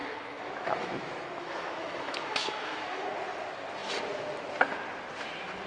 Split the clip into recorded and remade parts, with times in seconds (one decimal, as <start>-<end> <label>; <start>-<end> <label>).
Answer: 0.0-3.1 remade; 3.1-5.7 recorded